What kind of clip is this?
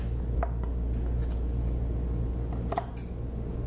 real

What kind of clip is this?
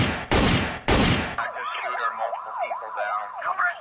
real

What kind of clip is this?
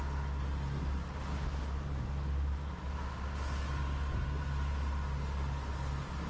real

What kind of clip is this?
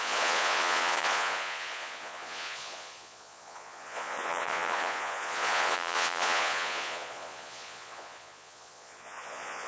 fake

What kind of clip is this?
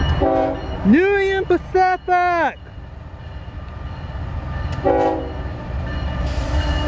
real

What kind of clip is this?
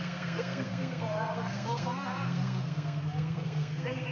fake